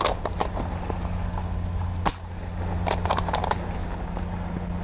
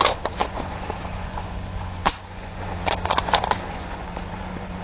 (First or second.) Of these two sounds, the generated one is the second